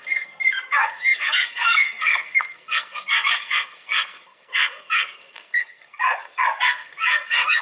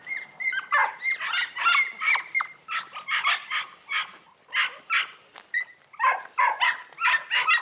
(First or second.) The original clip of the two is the second